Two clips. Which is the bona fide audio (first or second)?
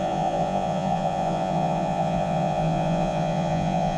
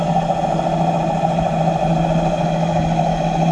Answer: second